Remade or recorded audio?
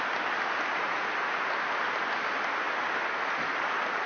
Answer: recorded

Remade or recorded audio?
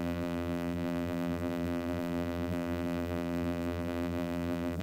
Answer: remade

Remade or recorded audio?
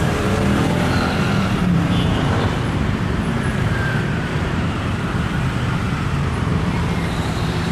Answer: remade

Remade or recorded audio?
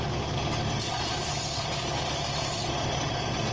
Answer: recorded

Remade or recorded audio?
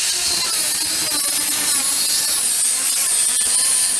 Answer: remade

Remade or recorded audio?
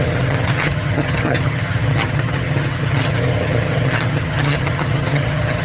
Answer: remade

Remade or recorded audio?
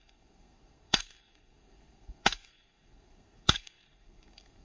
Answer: remade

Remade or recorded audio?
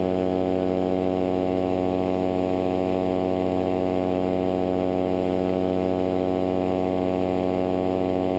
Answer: remade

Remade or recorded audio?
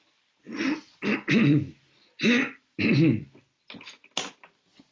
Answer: recorded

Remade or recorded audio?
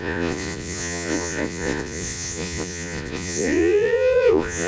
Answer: remade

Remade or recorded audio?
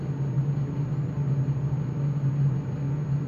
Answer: recorded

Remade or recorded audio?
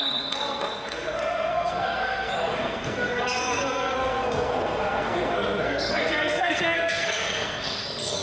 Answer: remade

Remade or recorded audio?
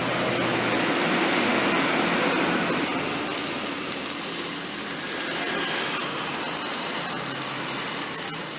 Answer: recorded